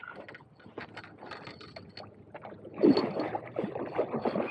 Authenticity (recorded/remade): recorded